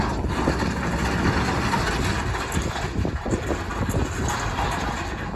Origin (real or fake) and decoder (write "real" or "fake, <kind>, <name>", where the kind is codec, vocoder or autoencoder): real